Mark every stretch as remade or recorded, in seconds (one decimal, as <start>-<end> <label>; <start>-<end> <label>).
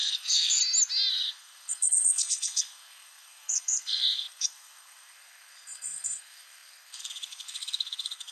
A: 0.0-0.6 remade; 0.6-1.1 recorded; 1.1-8.3 remade